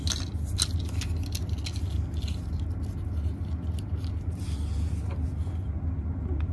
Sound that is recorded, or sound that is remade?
recorded